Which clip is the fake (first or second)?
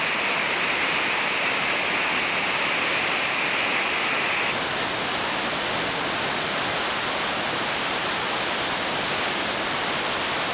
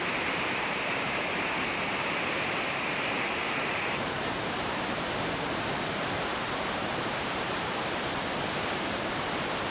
second